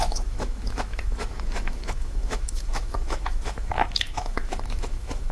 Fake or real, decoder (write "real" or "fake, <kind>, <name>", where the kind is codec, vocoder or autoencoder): fake, autoencoder, DAC-VAE